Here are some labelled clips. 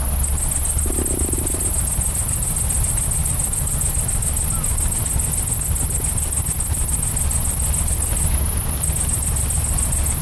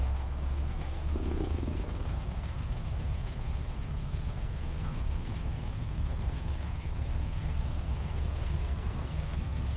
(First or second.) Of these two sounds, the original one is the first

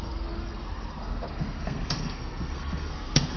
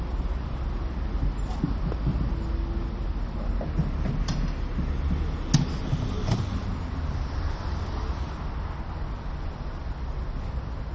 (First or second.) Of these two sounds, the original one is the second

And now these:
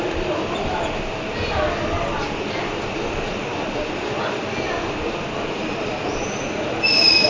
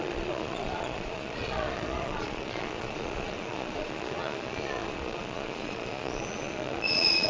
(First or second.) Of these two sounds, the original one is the first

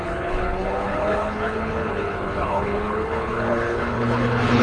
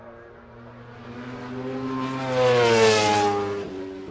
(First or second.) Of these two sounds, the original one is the second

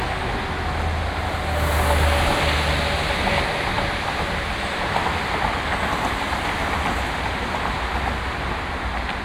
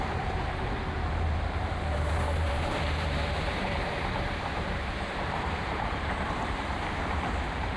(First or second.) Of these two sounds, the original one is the first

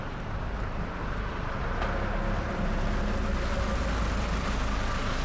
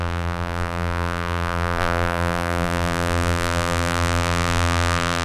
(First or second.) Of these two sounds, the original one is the first